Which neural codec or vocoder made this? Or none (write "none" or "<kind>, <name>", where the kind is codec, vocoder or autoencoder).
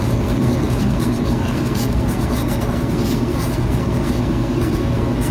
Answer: codec, SNAC